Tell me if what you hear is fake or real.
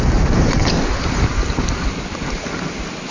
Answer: real